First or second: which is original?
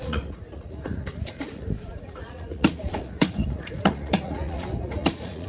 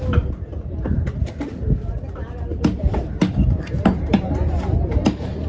second